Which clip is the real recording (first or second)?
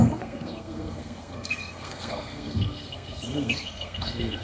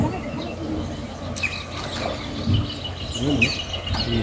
second